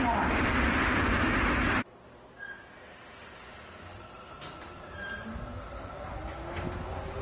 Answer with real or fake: real